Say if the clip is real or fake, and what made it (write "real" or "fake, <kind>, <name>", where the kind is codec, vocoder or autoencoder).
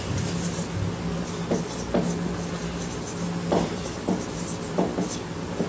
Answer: real